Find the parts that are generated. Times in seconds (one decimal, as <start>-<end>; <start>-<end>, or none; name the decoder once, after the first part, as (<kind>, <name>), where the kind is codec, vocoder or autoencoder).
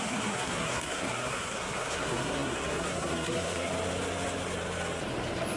0.0-3.7 (codec, SNAC)